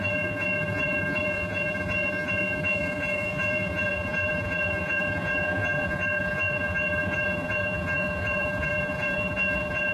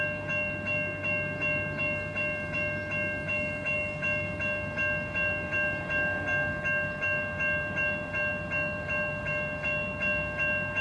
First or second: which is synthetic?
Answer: first